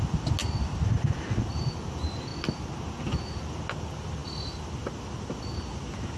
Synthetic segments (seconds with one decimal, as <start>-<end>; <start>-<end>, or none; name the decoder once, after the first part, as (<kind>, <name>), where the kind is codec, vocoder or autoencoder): none